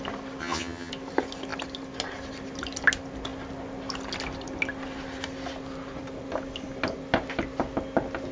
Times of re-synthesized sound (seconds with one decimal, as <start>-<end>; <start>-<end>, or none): 0.4-0.9